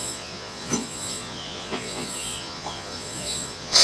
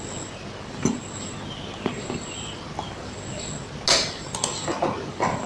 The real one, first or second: second